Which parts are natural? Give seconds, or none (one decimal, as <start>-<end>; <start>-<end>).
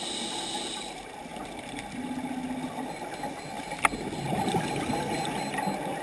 0.0-6.0